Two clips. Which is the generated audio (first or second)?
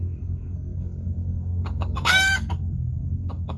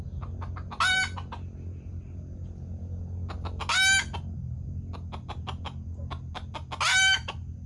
first